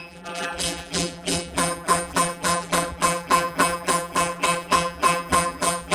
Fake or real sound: fake